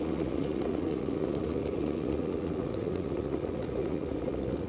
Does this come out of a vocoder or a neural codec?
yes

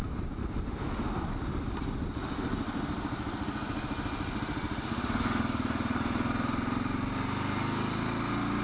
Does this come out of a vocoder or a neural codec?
no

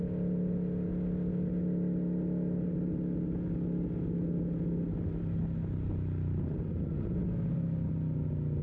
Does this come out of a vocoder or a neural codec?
no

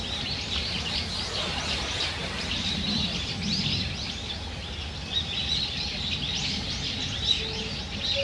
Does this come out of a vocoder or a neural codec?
yes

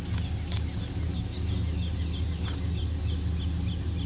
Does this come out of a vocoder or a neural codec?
no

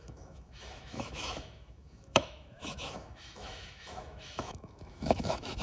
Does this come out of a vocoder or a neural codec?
yes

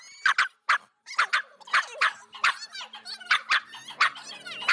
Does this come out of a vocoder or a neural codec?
no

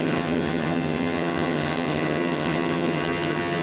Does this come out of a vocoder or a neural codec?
yes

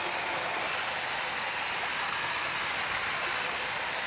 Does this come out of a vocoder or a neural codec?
no